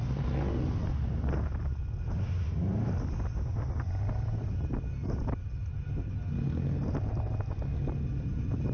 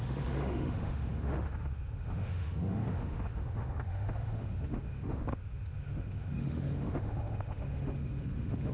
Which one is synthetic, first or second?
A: second